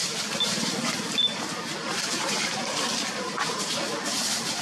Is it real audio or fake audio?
fake